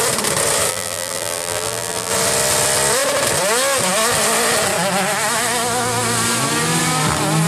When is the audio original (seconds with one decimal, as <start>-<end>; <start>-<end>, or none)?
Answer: 0.0-0.7; 2.1-7.5

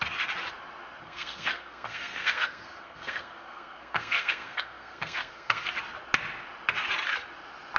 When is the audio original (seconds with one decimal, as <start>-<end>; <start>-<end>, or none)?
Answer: 0.0-1.0; 5.7-7.8

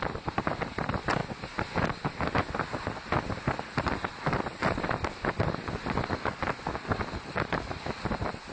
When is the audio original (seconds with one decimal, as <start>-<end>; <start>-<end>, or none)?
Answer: 1.2-2.8

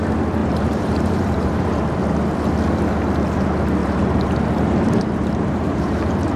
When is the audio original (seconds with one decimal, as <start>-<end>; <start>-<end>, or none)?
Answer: 0.0-0.4; 1.6-3.8; 6.0-6.4

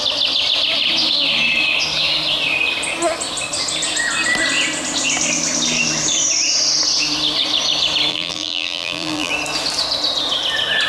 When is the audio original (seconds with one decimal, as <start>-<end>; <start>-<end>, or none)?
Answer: 0.0-8.1; 9.3-10.9